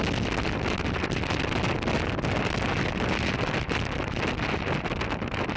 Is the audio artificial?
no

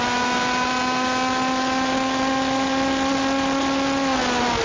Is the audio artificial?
no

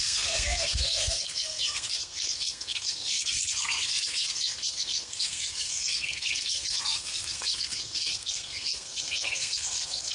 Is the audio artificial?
yes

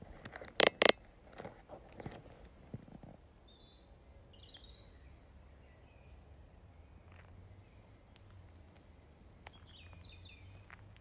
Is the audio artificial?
no